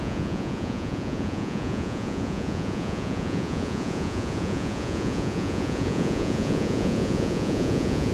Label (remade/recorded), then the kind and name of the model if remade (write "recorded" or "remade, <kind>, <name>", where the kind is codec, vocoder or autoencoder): remade, vocoder, Vocos